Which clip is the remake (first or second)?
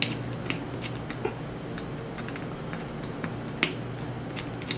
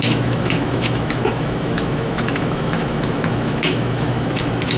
second